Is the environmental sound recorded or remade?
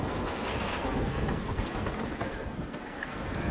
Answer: remade